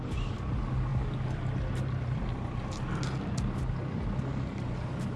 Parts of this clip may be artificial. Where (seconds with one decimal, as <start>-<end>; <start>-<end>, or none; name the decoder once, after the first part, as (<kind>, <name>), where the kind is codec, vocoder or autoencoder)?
none